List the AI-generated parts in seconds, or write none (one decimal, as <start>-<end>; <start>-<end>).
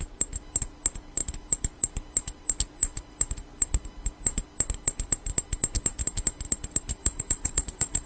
7.0-8.1